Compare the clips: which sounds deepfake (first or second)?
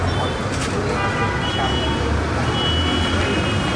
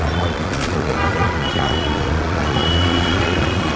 second